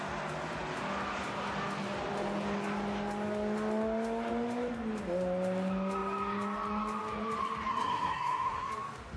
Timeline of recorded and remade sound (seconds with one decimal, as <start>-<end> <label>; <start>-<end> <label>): 0.0-7.7 recorded; 7.7-8.7 remade; 8.7-9.2 recorded